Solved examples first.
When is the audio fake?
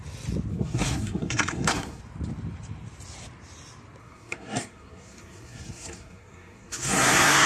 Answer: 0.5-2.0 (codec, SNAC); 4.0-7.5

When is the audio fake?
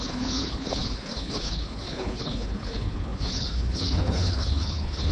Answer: 0.0-5.1 (codec, HILCodec)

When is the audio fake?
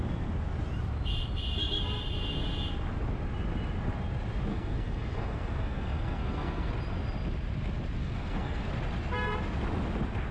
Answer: 4.5-6.7 (codec, SNAC); 8.0-8.7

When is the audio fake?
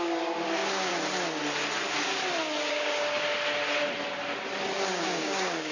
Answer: 0.0-0.9 (codec, DAC); 2.7-3.3; 4.9-5.7